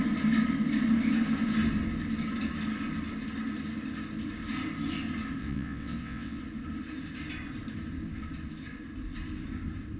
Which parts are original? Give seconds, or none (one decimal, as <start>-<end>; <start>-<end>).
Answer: 0.0-5.4; 6.4-10.0